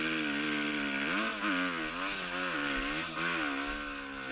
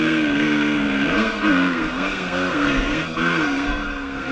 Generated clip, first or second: second